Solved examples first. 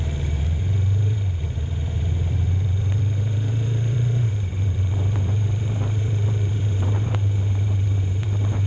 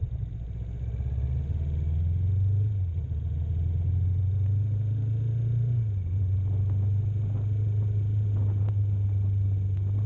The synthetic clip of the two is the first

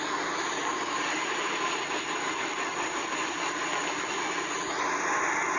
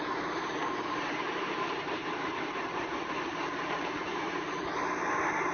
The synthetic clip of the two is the second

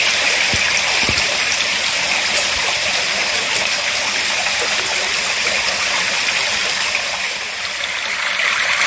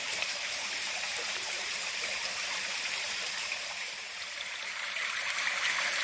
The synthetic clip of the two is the second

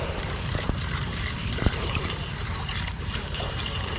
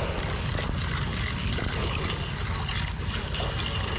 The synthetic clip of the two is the first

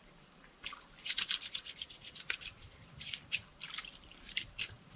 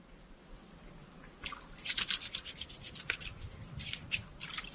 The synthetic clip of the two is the first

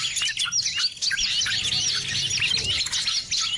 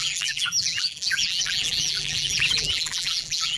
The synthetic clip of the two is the second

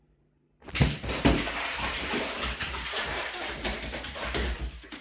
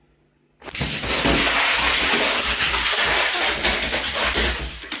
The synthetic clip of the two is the first